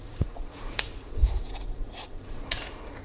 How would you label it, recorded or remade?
remade